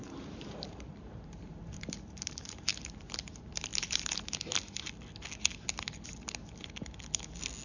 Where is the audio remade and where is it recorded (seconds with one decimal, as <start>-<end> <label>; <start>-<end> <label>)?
0.0-2.7 remade; 2.7-3.7 recorded; 3.7-4.3 remade; 4.3-7.6 recorded